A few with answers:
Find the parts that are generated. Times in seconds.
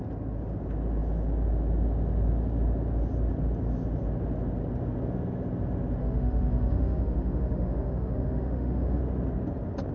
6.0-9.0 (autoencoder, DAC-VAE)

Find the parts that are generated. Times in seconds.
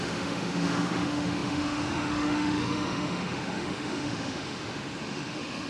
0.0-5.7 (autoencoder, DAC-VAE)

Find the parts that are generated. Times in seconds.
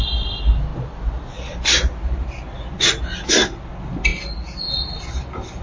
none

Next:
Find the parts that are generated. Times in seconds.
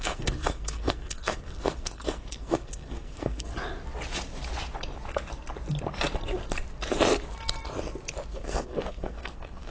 0.0-3.5 (codec, SNAC); 8.3-9.7